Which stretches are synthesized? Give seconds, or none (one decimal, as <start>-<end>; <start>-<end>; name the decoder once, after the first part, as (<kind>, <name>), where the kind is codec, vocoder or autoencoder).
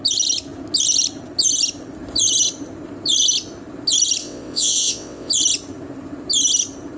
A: 4.2-5.3 (vocoder, WaveNeXt)